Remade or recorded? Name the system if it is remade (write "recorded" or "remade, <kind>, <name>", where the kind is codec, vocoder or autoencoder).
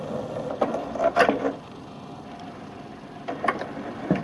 recorded